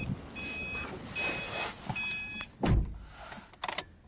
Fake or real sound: real